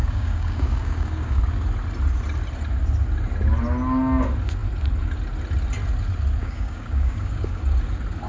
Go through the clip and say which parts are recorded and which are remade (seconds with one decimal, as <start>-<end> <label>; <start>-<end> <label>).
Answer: 0.0-1.4 remade; 1.4-6.4 recorded; 6.4-7.6 remade; 7.6-8.3 recorded